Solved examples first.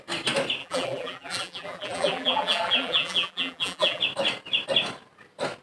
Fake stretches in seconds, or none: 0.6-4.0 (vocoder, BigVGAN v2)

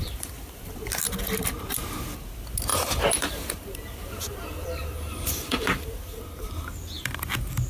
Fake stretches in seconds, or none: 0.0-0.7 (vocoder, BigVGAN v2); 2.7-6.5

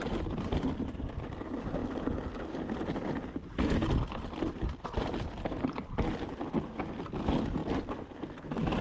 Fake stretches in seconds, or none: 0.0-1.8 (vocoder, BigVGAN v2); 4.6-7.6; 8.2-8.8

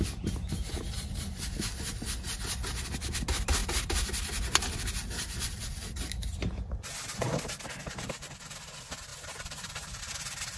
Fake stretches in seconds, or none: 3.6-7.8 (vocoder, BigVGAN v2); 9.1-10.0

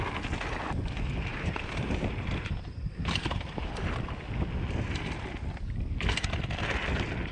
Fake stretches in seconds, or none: 1.3-3.8 (vocoder, BigVGAN v2)

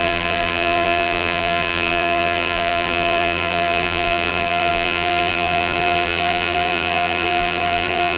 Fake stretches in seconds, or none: 0.0-8.2 (vocoder, BigVGAN v2)

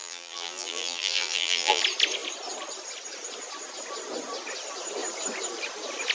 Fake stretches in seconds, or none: 0.0-1.8 (vocoder, BigVGAN v2)